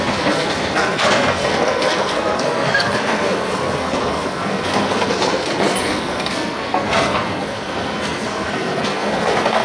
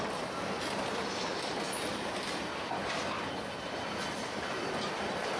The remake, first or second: first